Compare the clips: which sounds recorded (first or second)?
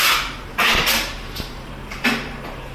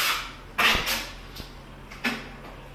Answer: second